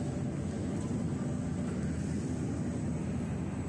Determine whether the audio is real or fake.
real